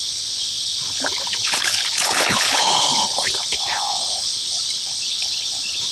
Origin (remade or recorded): remade